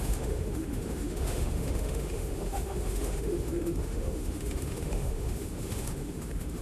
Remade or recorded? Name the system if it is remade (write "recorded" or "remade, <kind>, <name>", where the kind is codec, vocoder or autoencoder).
remade, autoencoder, DAC-VAE